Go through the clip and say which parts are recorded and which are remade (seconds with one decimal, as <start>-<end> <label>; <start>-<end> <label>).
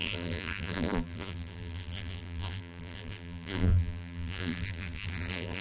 0.0-5.6 remade